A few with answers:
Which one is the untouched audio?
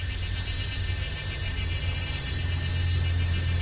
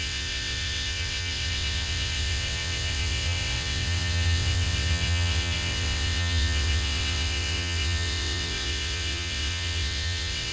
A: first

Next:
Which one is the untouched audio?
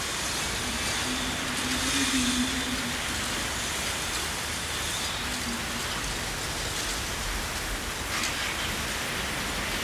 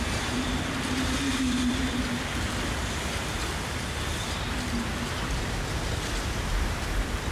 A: first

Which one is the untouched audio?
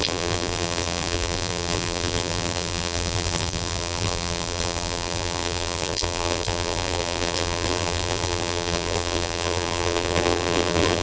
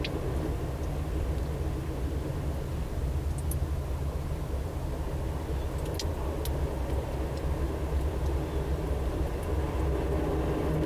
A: second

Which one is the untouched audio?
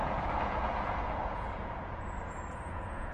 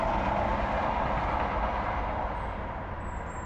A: second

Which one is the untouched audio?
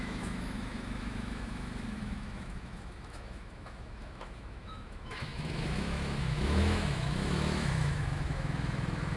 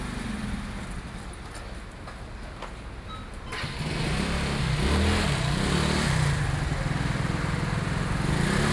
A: second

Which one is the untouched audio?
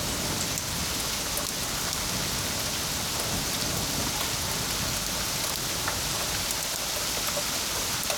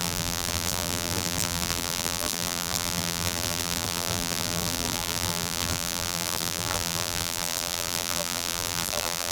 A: first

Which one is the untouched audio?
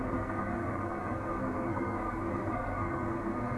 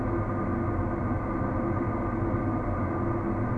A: second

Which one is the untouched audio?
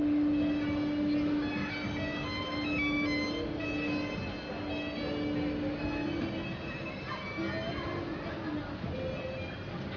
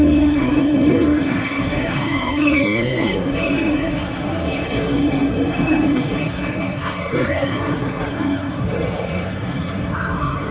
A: first